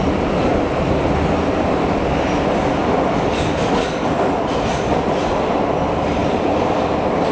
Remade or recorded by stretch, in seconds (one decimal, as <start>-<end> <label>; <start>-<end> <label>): 0.0-0.5 recorded; 0.5-1.5 remade; 1.5-2.8 recorded; 2.8-4.9 remade; 4.9-7.3 recorded